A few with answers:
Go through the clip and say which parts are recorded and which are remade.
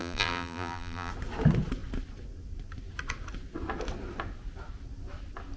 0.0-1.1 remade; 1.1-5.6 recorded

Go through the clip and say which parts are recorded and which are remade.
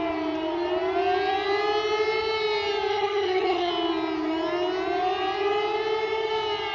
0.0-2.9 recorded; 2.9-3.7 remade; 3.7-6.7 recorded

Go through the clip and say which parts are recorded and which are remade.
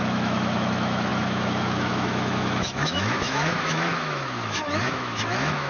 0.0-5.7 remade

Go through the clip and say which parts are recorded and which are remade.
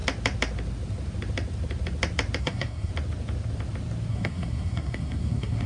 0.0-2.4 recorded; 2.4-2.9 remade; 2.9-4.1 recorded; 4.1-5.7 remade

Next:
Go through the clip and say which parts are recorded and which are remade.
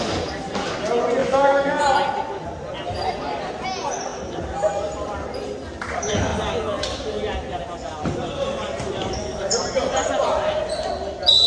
0.0-1.2 recorded; 1.2-1.8 remade; 1.8-11.5 recorded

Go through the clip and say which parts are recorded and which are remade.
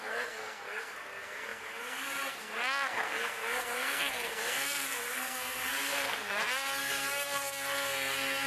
0.0-8.5 remade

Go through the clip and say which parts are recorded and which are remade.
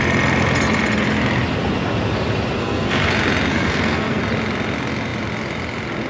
0.0-2.6 recorded; 2.6-3.1 remade; 3.1-3.5 recorded; 3.5-4.2 remade; 4.2-6.1 recorded